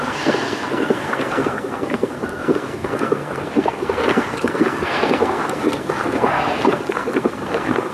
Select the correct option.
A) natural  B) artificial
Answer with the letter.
B